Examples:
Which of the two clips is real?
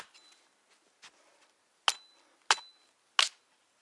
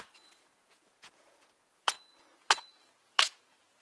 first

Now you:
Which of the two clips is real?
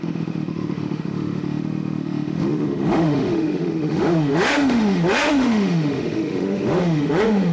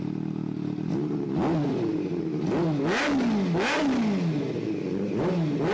second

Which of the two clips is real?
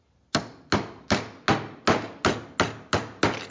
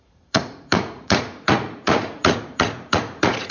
first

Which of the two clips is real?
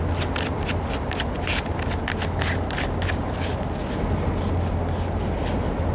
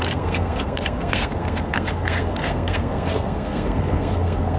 first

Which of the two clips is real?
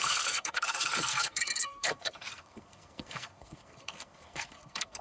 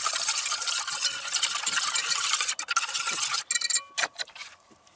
second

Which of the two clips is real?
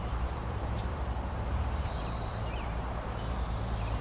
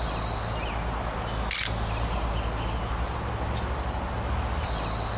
second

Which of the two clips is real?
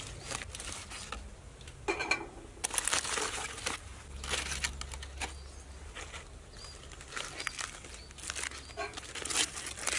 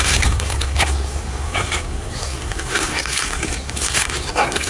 first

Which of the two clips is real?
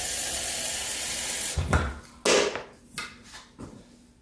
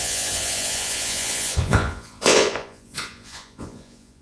first